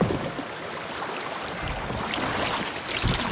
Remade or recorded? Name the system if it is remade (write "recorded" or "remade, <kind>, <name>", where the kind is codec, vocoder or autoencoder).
recorded